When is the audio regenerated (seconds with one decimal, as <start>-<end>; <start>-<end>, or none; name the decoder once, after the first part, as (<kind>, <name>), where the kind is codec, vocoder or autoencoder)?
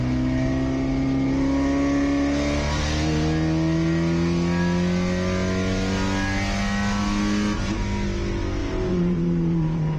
8.6-10.0 (vocoder, BigVGAN v2)